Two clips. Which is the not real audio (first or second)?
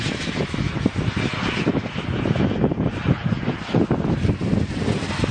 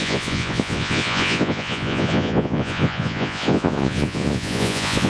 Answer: second